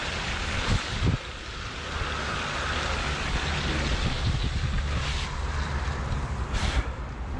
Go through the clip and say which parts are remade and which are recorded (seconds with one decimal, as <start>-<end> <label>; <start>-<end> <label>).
0.0-1.2 remade; 1.2-7.4 recorded